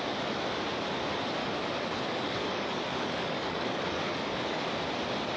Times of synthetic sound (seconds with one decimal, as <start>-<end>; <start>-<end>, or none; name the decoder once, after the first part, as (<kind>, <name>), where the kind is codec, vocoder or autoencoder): 1.4-4.6 (codec, DAC)

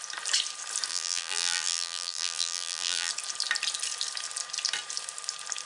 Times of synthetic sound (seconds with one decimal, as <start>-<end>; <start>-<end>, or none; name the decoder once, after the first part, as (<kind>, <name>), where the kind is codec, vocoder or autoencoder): 0.9-3.1 (vocoder, BigVGAN v2)

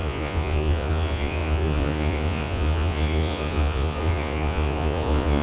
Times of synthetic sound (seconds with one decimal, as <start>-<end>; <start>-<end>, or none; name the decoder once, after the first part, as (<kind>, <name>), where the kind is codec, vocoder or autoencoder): 0.0-5.4 (vocoder, Vocos)

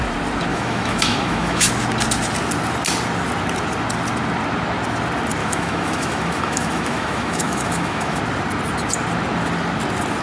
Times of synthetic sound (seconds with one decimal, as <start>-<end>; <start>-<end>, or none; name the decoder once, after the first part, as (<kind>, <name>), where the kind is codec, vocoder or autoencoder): 0.5-1.7 (autoencoder, DAC-VAE); 5.4-8.2

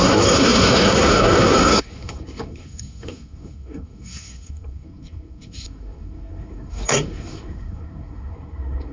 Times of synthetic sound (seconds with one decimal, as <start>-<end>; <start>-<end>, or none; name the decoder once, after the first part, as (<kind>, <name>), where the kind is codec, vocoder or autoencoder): 0.0-8.9 (codec, SNAC)

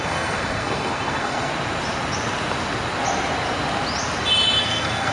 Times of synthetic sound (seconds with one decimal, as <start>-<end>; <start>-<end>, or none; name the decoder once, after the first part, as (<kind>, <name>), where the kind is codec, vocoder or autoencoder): 0.0-1.5 (codec, SNAC); 4.6-5.1

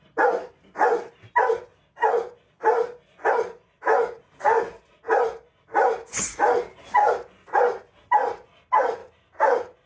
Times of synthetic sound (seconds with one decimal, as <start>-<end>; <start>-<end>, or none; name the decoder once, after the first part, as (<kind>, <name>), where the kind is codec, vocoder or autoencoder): none